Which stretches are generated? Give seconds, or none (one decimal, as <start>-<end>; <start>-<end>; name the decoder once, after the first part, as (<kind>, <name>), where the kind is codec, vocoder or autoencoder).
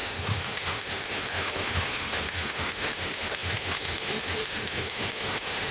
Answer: 0.0-5.7 (autoencoder, DAC-VAE)